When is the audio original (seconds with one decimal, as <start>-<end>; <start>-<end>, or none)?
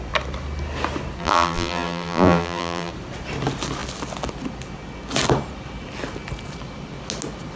0.0-1.2; 2.9-7.6